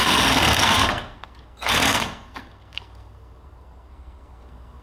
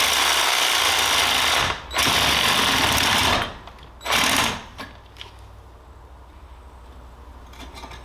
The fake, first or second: first